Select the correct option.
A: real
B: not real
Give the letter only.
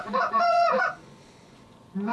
B